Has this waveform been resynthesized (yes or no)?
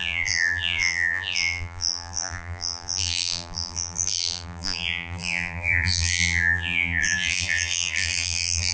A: yes